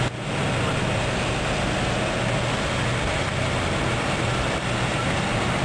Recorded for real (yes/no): yes